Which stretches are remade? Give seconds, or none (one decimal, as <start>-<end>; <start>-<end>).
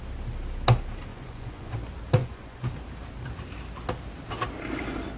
1.1-1.7; 2.2-2.7